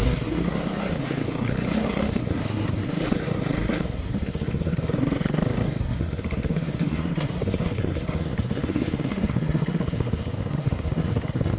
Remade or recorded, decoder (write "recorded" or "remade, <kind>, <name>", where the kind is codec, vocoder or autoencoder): remade, codec, SNAC